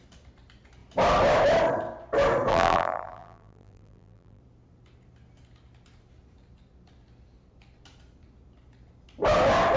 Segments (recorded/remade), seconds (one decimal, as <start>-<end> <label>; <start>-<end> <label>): 0.0-2.5 recorded; 2.5-4.4 remade; 4.4-9.8 recorded

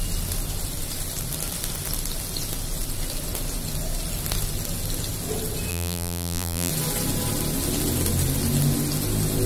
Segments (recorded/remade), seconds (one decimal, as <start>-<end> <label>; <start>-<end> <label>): 0.0-5.7 recorded; 5.7-6.7 remade; 6.7-9.5 recorded

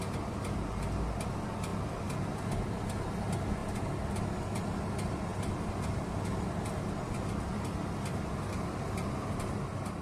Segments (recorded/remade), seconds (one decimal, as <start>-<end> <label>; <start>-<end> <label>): 0.0-3.6 recorded; 3.6-4.2 remade; 4.2-5.3 recorded; 5.3-6.2 remade; 6.2-10.0 recorded

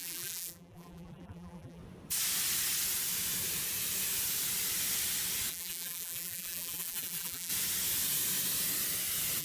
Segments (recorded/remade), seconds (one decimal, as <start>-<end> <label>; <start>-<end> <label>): 0.0-1.8 remade; 1.8-5.5 recorded; 5.5-7.5 remade; 7.5-9.4 recorded

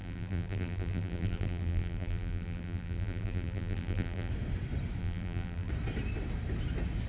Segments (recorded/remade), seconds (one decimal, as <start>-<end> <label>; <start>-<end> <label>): 0.0-4.3 remade; 4.3-5.0 recorded; 5.0-5.7 remade; 5.7-7.1 recorded

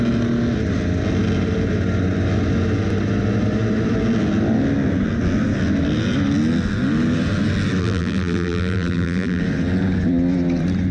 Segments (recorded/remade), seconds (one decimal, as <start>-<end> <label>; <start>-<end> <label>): 0.0-7.8 recorded; 7.8-9.4 remade; 9.4-10.9 recorded

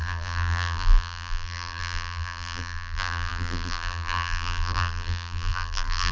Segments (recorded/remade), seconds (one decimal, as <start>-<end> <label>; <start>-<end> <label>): 0.0-6.1 remade

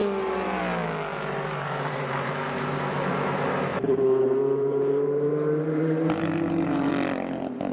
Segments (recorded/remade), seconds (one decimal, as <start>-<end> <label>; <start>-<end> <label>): 0.0-1.1 recorded; 1.1-2.3 remade; 2.3-3.7 recorded; 3.7-6.9 remade; 6.9-7.7 recorded